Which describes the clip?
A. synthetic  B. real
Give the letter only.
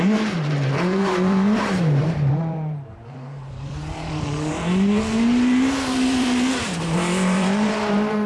A